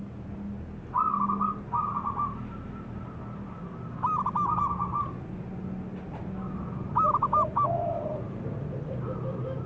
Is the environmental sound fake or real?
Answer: real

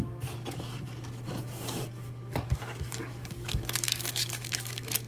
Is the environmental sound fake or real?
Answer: fake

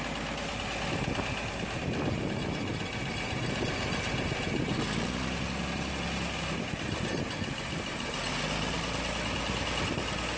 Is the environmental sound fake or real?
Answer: real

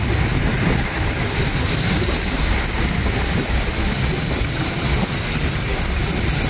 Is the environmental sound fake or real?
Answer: real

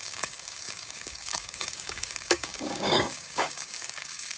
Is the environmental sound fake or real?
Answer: fake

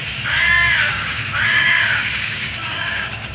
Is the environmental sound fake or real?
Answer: fake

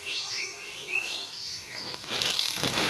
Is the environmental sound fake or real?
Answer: fake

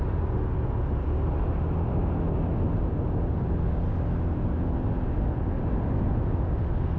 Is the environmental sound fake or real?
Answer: real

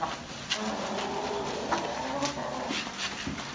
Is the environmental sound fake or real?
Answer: real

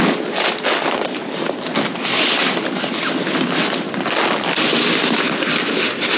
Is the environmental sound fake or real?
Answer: real